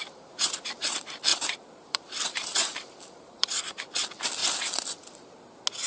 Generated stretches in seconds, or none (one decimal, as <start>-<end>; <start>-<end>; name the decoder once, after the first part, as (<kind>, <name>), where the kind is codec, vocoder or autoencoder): 0.0-0.9 (vocoder, BigVGAN v2); 1.3-3.8